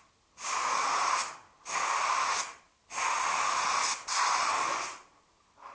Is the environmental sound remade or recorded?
recorded